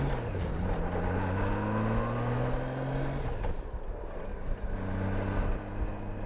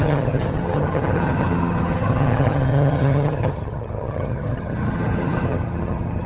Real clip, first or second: first